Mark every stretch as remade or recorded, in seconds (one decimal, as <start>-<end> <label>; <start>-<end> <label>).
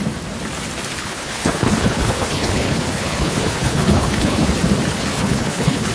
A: 0.0-1.0 recorded; 1.0-4.5 remade; 4.5-5.1 recorded; 5.1-5.9 remade